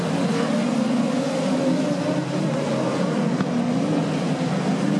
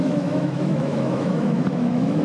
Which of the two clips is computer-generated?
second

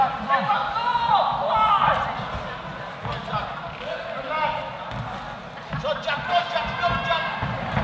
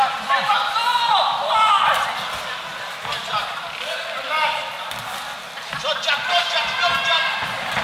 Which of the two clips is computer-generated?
second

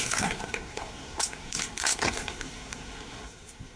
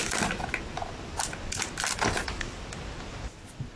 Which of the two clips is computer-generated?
first